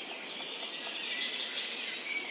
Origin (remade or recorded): recorded